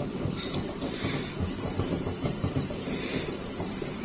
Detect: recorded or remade remade